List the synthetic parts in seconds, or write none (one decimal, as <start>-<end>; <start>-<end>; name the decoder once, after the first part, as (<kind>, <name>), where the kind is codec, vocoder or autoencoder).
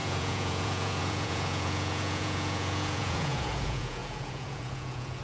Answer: 0.0-5.2 (vocoder, Vocos)